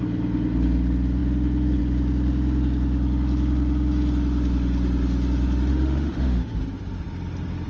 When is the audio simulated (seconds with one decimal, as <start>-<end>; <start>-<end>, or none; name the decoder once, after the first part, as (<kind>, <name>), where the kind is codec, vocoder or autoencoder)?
5.7-6.6 (autoencoder, DAC-VAE)